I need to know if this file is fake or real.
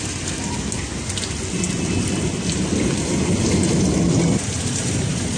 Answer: real